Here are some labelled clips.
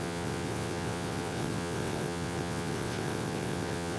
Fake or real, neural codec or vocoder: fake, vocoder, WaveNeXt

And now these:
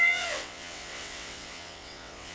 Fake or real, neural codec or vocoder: fake, vocoder, WaveNeXt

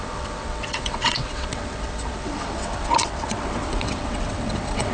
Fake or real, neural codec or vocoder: fake, vocoder, WaveNeXt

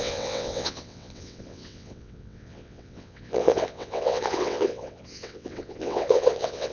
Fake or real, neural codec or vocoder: fake, vocoder, WaveNeXt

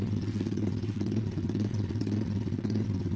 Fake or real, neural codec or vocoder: fake, vocoder, WaveNeXt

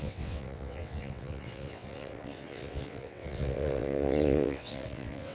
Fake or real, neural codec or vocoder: fake, vocoder, WaveNeXt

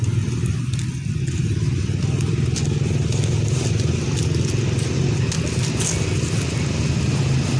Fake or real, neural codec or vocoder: real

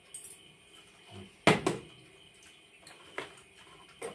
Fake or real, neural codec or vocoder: real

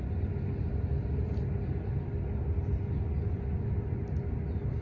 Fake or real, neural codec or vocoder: real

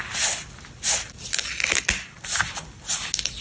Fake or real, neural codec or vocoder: real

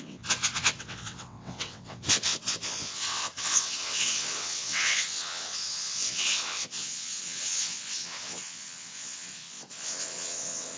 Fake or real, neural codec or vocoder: fake, vocoder, WaveNeXt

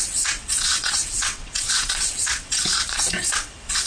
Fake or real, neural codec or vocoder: fake, vocoder, WaveNeXt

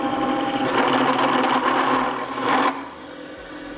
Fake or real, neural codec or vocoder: real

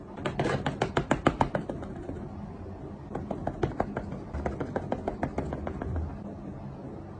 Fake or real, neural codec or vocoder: real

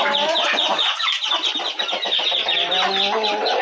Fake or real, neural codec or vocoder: real